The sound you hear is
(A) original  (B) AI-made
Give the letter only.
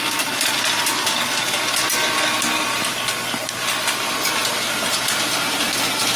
A